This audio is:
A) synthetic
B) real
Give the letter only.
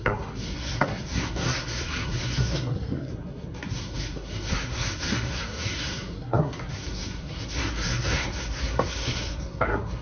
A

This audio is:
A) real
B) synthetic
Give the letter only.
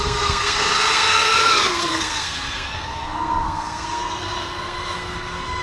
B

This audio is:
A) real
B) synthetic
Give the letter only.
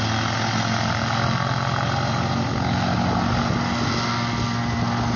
A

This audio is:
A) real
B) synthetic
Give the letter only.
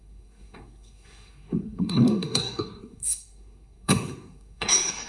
B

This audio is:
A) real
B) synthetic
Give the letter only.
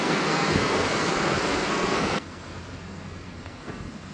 B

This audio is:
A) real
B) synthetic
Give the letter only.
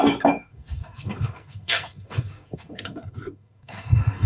B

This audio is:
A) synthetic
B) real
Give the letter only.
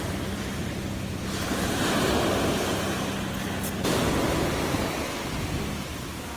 B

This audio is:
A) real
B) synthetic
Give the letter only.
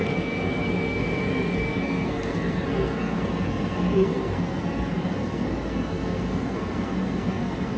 B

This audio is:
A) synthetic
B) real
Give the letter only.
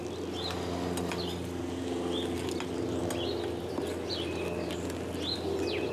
B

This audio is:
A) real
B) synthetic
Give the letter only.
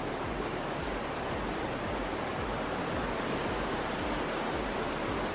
A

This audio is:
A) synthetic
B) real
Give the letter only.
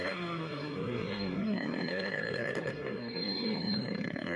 A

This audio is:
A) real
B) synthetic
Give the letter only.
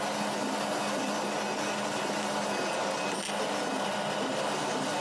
A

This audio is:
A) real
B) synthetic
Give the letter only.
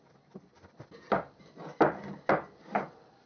A